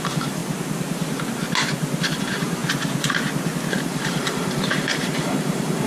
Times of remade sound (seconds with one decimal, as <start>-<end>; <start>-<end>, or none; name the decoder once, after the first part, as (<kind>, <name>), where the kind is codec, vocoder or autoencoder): 0.0-0.4 (vocoder, BigVGAN v2); 2.0-2.6; 3.7-5.9